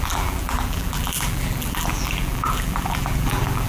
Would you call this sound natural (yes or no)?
no